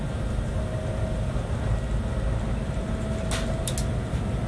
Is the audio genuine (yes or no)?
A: yes